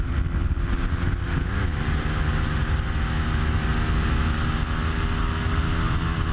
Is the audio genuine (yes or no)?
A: yes